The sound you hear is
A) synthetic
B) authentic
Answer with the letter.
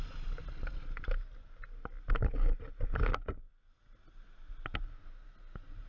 B